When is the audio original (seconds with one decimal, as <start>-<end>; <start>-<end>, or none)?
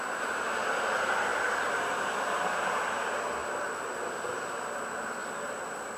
0.0-1.3; 2.0-3.4; 4.1-5.2